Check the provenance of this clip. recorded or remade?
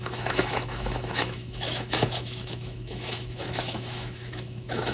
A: remade